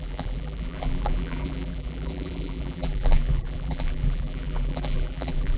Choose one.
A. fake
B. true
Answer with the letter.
A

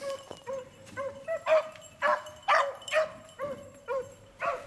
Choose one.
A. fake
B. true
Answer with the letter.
A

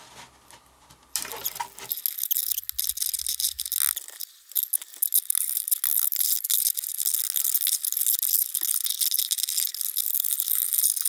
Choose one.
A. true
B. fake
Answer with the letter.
A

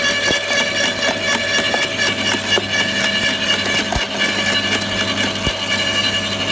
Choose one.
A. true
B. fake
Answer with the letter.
A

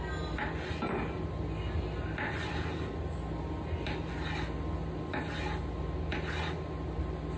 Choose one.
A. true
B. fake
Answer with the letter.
A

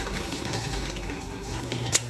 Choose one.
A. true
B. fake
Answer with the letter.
B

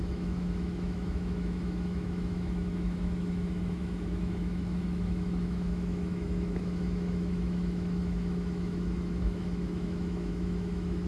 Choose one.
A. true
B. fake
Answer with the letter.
B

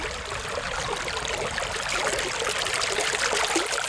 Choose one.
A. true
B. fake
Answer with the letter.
A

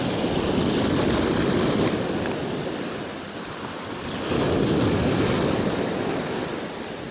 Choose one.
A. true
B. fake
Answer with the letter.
A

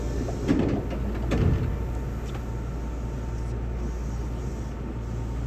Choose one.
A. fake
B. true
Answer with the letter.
B